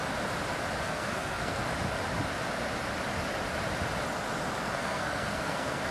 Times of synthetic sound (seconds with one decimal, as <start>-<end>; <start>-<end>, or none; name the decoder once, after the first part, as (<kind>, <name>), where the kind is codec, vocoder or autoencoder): 0.8-1.6 (codec, SNAC); 4.6-5.9